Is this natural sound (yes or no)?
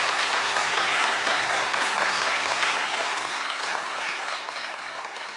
no